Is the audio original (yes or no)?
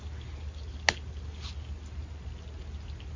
yes